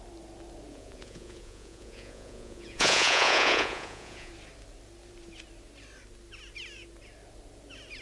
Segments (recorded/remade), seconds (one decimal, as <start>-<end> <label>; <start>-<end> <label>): 0.0-0.7 recorded; 0.7-4.3 remade; 4.3-8.0 recorded